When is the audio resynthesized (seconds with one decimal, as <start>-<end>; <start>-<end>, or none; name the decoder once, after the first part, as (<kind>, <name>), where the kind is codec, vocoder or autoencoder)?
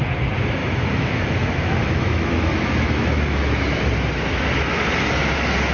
0.6-3.8 (autoencoder, DAC-VAE)